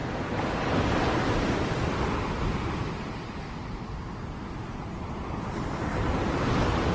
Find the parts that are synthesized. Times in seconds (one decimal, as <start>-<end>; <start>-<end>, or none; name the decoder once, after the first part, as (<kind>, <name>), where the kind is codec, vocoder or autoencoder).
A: none